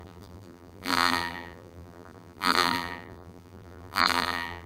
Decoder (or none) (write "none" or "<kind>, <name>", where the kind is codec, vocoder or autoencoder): vocoder, BigVGAN v2